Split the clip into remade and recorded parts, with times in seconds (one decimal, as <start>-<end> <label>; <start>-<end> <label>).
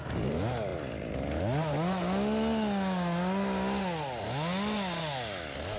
0.0-5.8 recorded